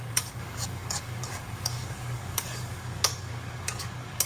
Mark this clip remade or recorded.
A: remade